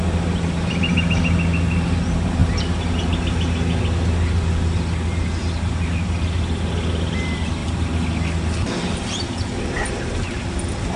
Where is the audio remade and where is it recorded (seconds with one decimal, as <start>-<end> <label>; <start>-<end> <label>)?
0.0-11.0 recorded